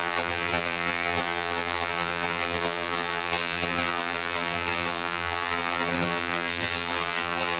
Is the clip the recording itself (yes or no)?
no